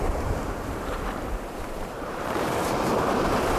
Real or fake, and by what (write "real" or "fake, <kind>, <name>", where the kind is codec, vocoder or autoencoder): fake, vocoder, BigVGAN v2